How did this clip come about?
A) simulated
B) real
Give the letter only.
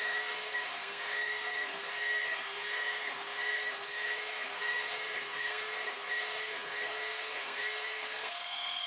A